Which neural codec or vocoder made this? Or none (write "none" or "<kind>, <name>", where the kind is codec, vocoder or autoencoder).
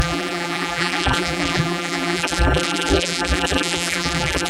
vocoder, BigVGAN v2